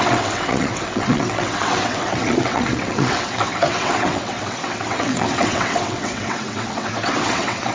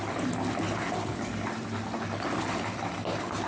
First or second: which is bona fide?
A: second